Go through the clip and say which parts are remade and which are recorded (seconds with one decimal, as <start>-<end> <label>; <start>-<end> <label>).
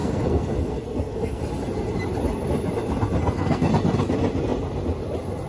0.0-1.4 remade; 1.4-3.2 recorded; 3.2-3.7 remade; 3.7-5.5 recorded